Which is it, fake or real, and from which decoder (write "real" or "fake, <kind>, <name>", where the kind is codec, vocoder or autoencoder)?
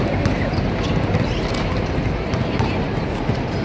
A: real